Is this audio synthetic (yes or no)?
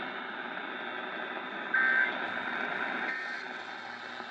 no